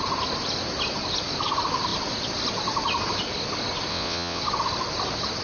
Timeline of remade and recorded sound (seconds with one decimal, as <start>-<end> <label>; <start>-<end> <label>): 0.0-3.9 recorded; 3.9-4.4 remade; 4.4-5.4 recorded